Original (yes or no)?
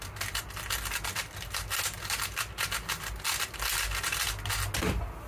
yes